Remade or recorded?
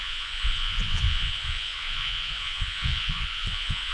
remade